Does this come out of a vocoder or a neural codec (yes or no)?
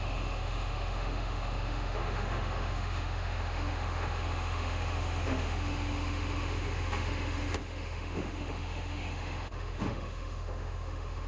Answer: yes